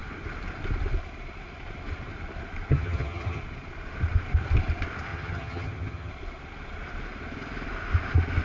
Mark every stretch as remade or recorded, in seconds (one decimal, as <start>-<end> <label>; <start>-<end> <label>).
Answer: 0.0-2.7 recorded; 2.7-3.4 remade; 3.4-5.1 recorded; 5.1-6.1 remade; 6.1-8.4 recorded